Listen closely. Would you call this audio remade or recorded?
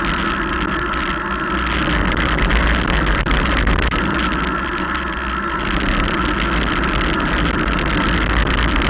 recorded